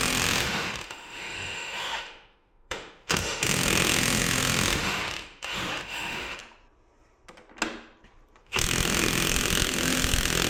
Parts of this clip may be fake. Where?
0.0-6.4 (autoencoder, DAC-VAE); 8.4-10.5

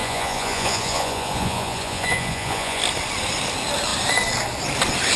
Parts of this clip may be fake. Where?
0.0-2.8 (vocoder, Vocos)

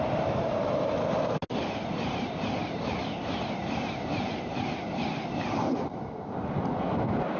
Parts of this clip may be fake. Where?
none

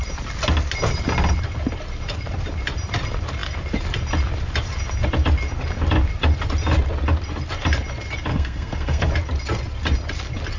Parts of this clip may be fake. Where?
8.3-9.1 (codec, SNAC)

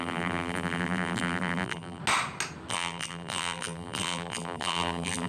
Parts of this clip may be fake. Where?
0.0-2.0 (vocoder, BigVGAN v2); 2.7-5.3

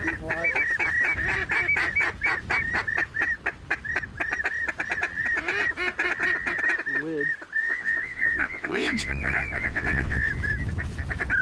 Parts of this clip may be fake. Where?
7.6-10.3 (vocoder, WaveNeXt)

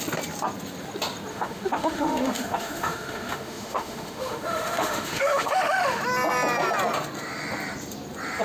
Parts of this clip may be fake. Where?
1.3-6.0 (autoencoder, DAC-VAE)